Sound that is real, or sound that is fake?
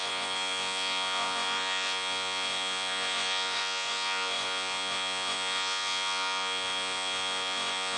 fake